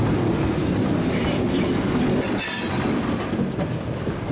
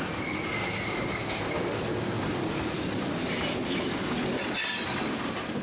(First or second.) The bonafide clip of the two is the first